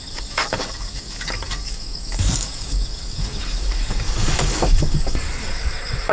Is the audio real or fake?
fake